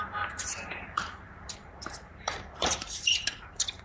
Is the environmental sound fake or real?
fake